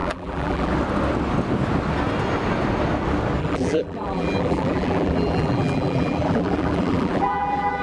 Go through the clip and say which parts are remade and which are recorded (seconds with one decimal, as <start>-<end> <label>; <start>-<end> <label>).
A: 0.0-0.7 remade; 0.7-3.4 recorded; 3.4-7.8 remade